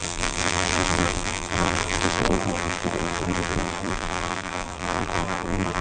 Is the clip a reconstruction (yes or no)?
yes